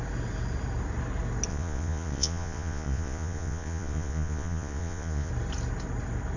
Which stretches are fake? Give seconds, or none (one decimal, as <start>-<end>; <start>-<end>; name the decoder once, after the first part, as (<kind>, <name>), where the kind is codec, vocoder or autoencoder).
1.5-5.3 (vocoder, Vocos)